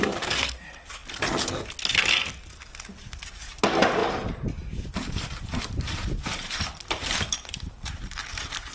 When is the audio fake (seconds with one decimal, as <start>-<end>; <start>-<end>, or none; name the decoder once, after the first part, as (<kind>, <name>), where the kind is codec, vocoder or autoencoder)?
4.0-8.7 (vocoder, BigVGAN v2)